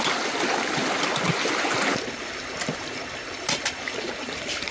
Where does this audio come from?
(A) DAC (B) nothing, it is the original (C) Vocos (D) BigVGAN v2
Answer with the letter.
B